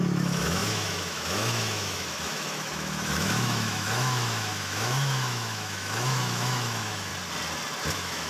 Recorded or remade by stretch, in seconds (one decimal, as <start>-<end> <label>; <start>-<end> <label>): 0.0-7.1 remade; 7.1-7.9 recorded; 7.9-8.3 remade